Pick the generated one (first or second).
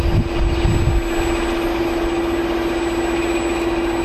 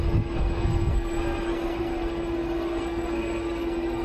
second